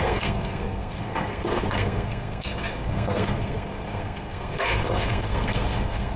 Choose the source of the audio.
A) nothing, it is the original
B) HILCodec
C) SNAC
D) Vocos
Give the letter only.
C